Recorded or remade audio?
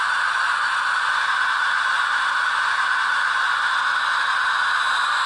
recorded